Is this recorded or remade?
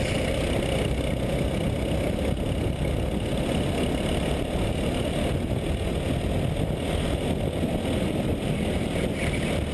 recorded